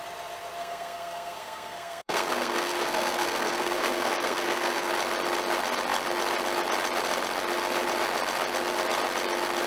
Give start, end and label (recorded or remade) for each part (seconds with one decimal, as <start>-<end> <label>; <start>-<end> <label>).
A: 0.0-0.6 recorded; 0.6-4.9 remade; 4.9-9.7 recorded